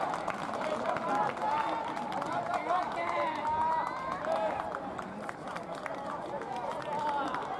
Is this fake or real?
real